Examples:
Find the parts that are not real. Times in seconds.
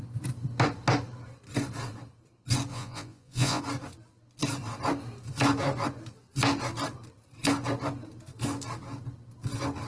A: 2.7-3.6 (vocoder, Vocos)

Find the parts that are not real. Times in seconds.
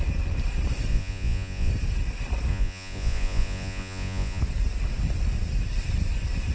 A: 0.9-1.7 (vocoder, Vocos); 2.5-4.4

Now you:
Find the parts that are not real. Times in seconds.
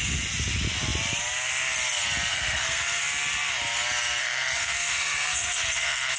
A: 2.3-3.0 (codec, SNAC); 4.2-6.2